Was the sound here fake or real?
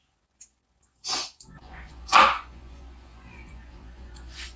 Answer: fake